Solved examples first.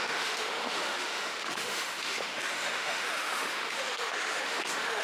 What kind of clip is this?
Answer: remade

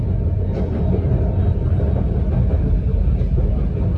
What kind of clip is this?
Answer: recorded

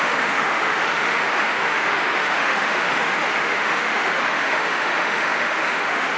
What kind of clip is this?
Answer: remade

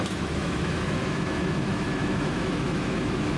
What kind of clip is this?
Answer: remade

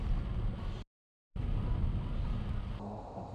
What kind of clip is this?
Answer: recorded